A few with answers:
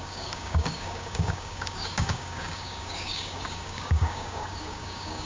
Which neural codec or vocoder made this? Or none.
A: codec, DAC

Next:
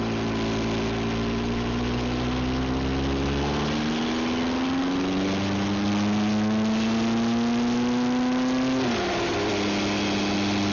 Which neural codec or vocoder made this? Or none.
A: none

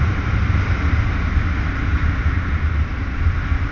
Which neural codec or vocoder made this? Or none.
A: none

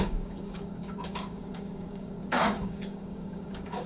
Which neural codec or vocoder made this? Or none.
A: codec, DAC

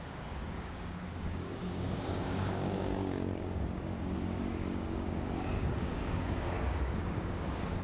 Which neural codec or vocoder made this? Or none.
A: codec, DAC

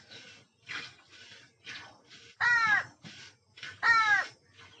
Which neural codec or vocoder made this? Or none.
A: none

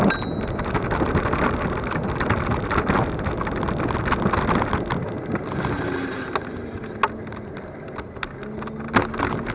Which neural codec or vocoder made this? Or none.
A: none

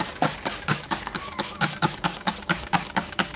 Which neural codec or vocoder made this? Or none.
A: codec, DAC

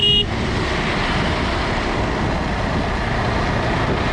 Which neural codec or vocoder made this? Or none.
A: none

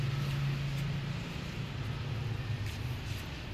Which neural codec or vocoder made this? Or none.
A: none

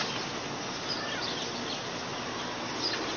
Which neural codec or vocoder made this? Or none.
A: none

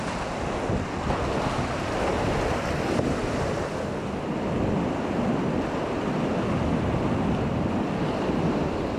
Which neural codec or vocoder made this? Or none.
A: none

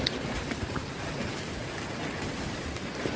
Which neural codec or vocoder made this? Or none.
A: none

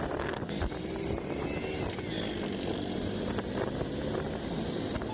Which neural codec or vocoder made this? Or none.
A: none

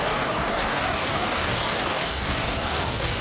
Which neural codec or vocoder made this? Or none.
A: codec, DAC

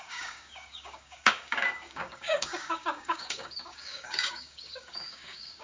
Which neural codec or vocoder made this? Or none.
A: codec, DAC